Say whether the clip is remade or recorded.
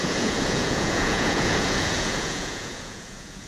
remade